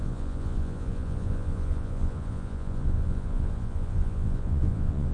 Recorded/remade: remade